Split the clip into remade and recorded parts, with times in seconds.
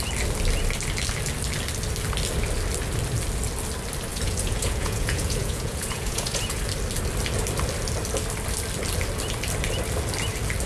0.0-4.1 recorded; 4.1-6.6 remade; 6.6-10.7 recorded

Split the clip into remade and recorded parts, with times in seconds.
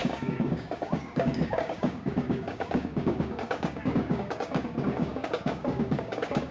0.0-6.5 remade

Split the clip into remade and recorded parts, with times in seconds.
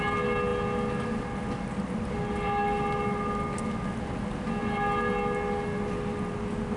0.0-6.8 recorded